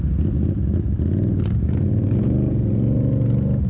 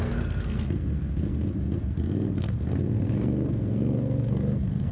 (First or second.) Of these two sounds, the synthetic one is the second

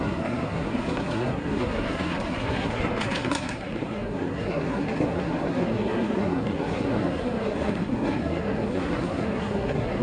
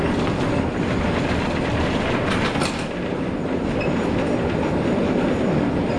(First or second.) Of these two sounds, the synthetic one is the first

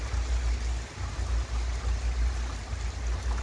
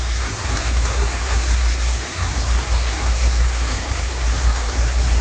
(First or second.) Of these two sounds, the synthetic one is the second